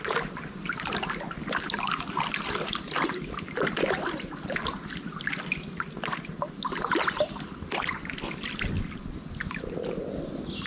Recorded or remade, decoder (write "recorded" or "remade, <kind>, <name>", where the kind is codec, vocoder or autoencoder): recorded